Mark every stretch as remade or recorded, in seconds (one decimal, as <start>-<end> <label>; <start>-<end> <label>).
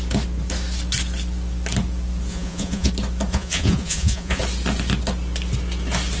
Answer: 0.0-2.3 recorded; 2.3-2.9 remade; 2.9-3.3 recorded; 3.3-4.4 remade; 4.4-6.2 recorded